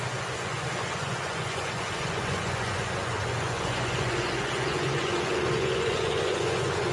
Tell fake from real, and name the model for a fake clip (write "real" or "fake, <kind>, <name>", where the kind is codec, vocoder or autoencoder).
fake, vocoder, Vocos